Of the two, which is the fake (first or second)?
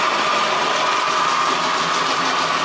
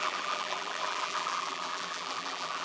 second